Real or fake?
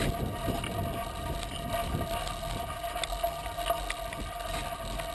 real